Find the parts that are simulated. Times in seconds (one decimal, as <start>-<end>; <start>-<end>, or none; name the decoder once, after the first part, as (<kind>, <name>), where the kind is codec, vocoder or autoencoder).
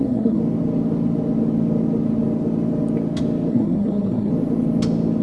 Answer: 0.0-0.4 (codec, SNAC); 3.5-4.3